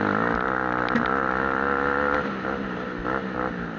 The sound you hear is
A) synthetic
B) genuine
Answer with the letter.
B